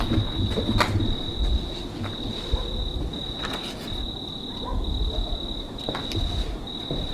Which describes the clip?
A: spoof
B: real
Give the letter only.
B